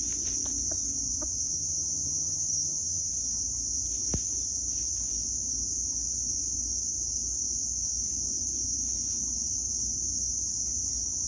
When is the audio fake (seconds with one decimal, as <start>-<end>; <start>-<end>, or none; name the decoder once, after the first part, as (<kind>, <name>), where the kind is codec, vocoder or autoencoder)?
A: 1.5-3.1 (vocoder, HiFi-GAN)